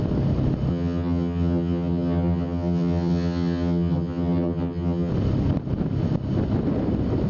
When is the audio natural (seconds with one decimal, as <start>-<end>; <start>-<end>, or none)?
0.0-0.7; 5.1-7.3